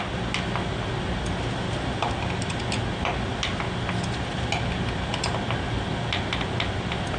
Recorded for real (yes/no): yes